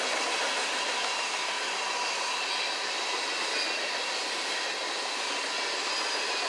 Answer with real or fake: real